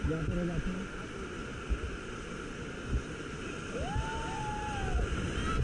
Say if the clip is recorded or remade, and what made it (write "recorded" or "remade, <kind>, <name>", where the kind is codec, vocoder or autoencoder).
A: recorded